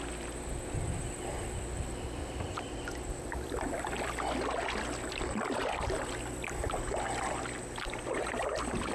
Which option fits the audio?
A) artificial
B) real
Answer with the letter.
B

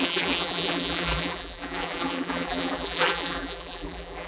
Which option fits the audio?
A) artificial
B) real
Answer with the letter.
A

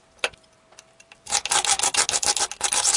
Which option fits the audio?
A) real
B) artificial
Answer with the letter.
A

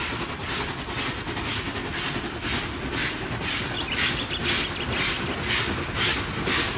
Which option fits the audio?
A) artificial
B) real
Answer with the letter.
B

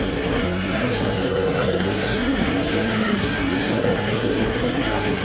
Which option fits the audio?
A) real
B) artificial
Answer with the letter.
B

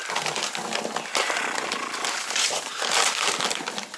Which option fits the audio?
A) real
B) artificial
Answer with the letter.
A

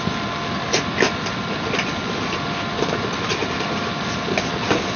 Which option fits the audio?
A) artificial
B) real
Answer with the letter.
B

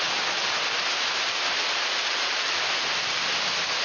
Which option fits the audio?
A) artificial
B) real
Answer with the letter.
B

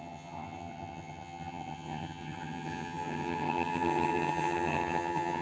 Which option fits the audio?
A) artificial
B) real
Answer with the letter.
A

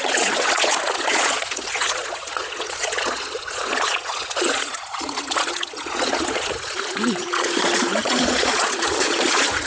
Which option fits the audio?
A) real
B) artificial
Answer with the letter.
B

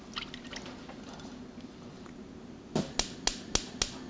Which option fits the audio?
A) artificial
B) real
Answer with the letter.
B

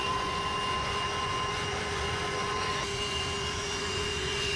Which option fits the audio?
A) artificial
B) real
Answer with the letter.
A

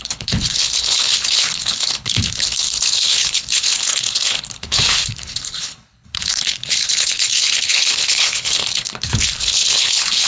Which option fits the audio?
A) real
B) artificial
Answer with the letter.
B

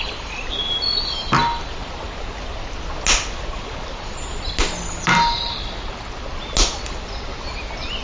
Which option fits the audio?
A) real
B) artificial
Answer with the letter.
A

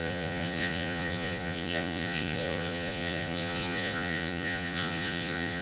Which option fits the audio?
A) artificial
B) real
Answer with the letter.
A